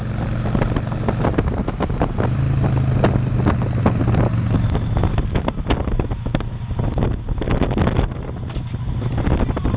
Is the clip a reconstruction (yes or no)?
no